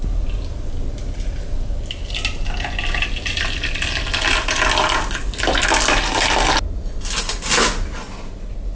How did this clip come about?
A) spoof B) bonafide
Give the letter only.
B